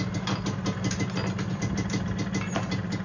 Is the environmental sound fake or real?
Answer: real